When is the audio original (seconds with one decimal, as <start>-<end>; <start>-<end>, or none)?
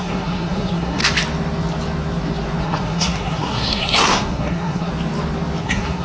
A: 1.0-2.6; 4.9-5.6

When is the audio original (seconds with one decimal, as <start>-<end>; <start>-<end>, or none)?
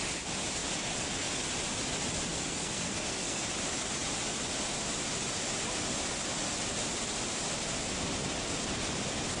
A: 0.0-2.3; 3.4-9.4